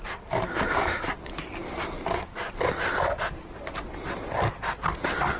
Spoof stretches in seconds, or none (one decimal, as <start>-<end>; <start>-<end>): none